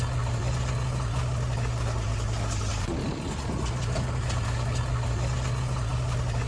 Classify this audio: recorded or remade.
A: recorded